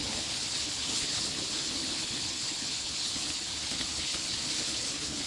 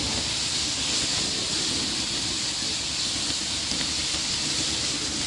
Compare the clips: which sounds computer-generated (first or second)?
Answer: first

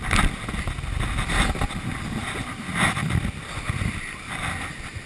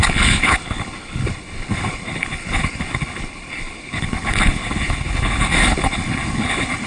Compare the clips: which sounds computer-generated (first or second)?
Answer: second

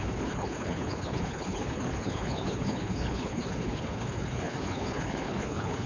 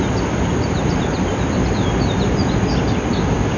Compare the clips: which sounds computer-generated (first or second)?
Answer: first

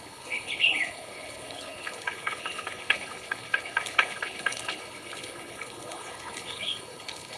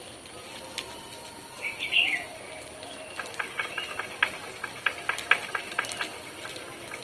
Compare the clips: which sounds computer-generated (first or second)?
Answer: first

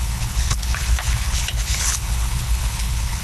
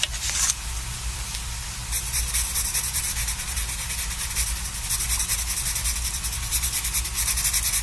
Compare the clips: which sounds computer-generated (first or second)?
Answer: first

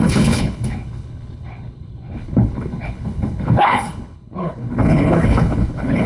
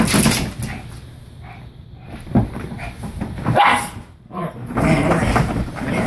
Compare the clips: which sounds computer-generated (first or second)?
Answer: first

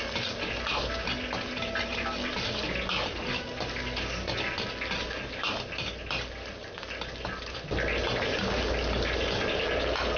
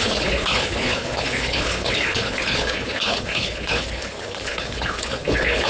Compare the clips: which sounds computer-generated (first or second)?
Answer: second